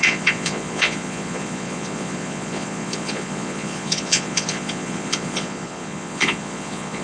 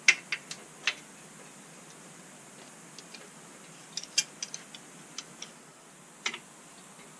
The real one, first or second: second